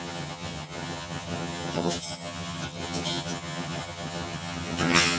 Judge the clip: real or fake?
fake